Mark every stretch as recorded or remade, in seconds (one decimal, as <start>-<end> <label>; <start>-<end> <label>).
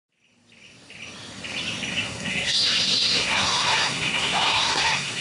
0.0-1.9 recorded; 1.9-5.2 remade